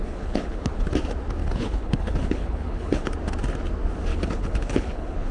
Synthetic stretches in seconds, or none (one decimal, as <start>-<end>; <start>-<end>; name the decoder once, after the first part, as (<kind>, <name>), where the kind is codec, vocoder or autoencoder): 0.0-0.9 (codec, HILCodec); 1.4-3.1; 4.1-5.3